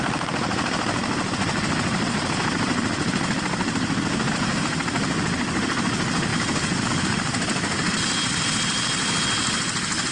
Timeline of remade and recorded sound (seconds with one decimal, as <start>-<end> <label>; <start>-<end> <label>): 0.0-10.1 recorded